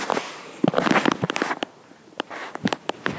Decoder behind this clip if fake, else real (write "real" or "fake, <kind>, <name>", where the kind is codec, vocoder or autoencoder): real